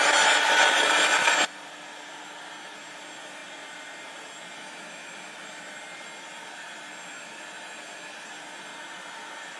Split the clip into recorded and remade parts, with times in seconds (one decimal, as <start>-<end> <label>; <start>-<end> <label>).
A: 0.0-3.4 recorded; 3.4-4.2 remade; 4.2-8.7 recorded; 8.7-9.6 remade